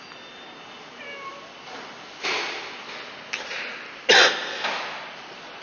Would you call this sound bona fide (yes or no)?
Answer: yes